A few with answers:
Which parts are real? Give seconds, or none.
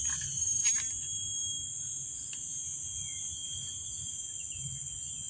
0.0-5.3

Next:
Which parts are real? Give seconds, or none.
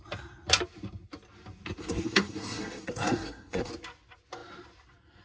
0.0-1.8; 3.7-5.2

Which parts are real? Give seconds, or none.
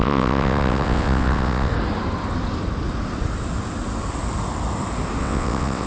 1.7-5.2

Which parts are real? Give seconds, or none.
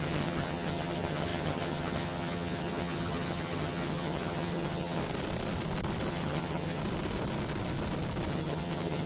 5.0-6.1; 6.8-8.3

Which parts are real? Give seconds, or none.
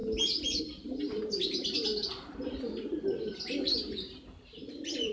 0.0-0.6; 1.9-5.1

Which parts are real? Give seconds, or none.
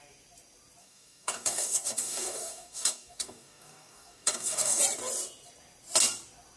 0.0-0.8; 4.8-6.6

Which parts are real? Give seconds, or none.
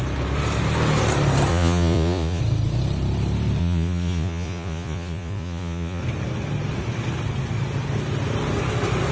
0.0-1.5; 2.4-3.6; 6.0-9.1